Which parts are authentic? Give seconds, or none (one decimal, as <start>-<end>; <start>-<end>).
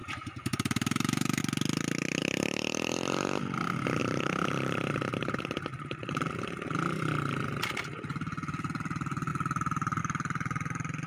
1.4-2.2; 3.4-4.0; 5.4-11.1